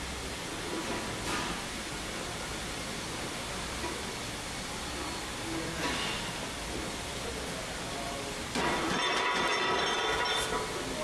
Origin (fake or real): real